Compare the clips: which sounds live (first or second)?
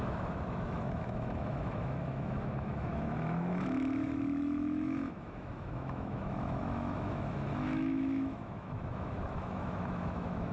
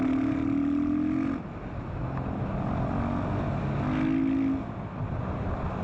second